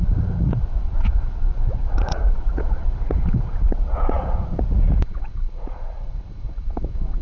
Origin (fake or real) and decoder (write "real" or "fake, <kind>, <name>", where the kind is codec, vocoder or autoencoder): fake, vocoder, Vocos